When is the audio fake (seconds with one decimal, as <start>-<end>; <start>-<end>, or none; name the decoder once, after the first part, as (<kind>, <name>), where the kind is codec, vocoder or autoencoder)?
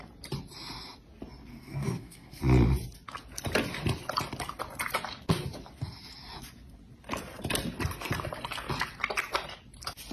1.5-2.4 (codec, SNAC)